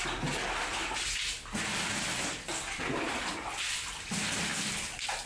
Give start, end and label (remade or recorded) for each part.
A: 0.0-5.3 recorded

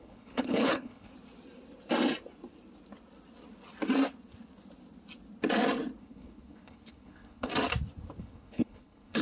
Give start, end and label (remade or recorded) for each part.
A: 0.0-1.1 remade; 1.1-6.0 recorded; 6.0-7.5 remade; 7.5-8.2 recorded; 8.2-9.2 remade

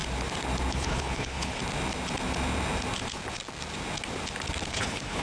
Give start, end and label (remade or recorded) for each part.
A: 0.0-0.7 recorded; 0.7-1.6 remade; 1.6-4.7 recorded; 4.7-5.2 remade

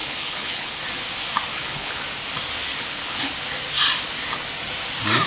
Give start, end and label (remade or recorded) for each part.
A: 0.0-0.8 remade; 0.8-1.5 recorded; 1.5-2.0 remade; 2.0-2.7 recorded; 2.7-3.3 remade; 3.3-5.3 recorded

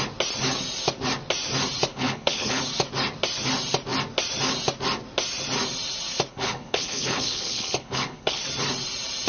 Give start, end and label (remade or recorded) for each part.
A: 0.0-1.9 recorded; 1.9-2.6 remade; 2.6-6.3 recorded; 6.3-8.4 remade; 8.4-9.3 recorded